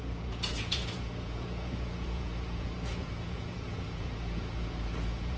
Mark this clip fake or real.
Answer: fake